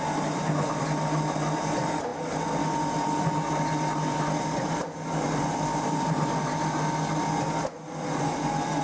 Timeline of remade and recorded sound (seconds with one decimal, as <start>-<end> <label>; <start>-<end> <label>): 0.0-8.8 recorded